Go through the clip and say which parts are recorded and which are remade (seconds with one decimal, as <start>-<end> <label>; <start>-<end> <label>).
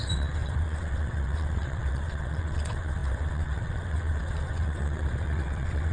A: 0.0-5.9 remade